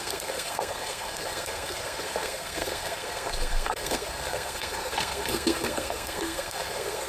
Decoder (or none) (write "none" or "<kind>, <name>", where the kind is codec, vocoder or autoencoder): codec, SNAC